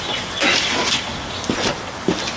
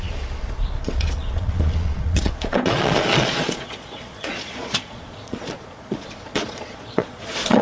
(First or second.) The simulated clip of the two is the second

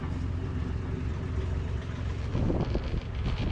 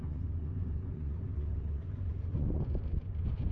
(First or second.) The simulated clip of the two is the second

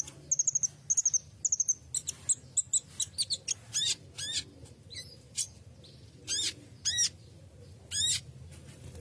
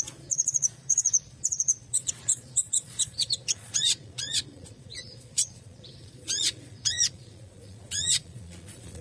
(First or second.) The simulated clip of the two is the second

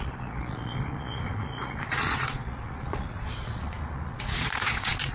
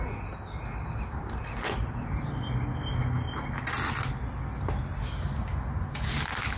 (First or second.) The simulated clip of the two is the first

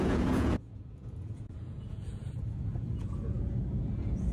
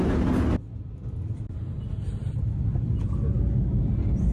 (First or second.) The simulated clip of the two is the first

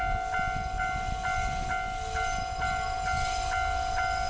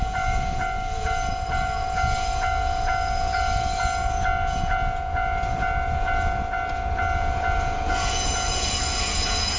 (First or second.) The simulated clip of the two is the second